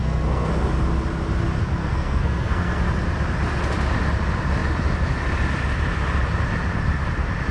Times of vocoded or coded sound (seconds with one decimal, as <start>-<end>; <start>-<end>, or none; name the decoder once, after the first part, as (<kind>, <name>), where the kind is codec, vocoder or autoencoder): 0.0-0.5 (codec, SNAC); 1.8-2.8

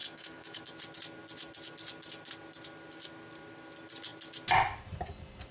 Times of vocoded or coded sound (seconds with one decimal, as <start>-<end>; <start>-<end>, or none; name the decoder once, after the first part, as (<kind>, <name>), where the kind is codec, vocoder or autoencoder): 0.0-0.6 (codec, DAC)

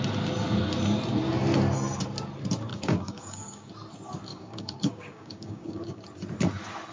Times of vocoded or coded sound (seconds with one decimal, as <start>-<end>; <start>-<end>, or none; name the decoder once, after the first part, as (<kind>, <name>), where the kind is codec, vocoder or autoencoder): 2.7-3.7 (codec, DAC); 4.3-6.0

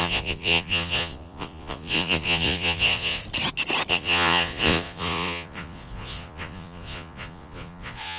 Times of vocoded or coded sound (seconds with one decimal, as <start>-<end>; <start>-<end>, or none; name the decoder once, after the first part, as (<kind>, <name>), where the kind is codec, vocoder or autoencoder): 0.0-3.2 (vocoder, Vocos); 3.9-8.2

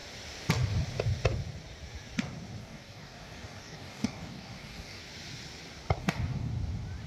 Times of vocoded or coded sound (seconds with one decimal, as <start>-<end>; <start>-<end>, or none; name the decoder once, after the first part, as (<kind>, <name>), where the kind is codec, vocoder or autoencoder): 2.6-5.0 (codec, DAC); 6.0-6.5

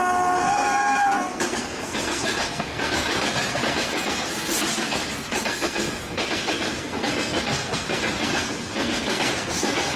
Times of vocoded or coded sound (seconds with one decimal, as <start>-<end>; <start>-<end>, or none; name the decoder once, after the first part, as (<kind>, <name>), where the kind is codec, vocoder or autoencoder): 0.0-10.0 (codec, SNAC)

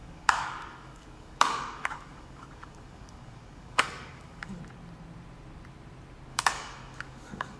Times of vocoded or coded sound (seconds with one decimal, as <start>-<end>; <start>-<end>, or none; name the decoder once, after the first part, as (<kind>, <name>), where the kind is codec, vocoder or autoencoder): 0.0-4.6 (codec, DAC); 6.3-7.6